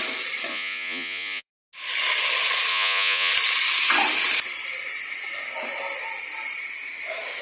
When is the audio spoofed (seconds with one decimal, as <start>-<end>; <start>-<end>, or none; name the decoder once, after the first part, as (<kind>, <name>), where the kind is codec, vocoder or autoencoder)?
0.5-1.5 (vocoder, Vocos); 2.7-3.3